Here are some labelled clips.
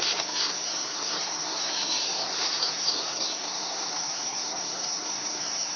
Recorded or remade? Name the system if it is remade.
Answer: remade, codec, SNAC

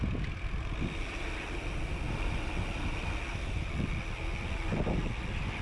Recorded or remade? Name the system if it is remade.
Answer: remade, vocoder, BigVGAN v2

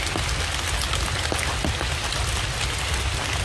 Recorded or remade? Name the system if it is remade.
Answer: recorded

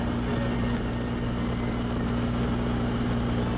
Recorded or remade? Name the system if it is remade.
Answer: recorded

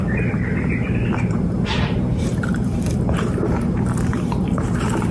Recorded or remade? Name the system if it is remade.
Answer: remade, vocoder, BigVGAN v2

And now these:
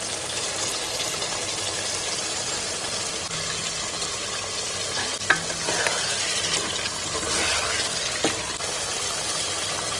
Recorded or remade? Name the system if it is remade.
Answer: recorded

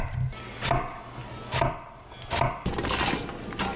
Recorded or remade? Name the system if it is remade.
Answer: recorded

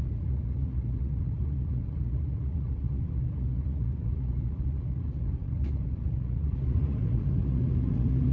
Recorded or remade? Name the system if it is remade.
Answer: remade, vocoder, Vocos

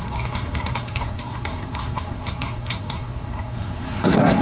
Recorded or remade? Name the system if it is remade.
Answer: remade, codec, SNAC